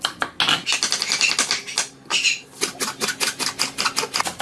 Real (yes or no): yes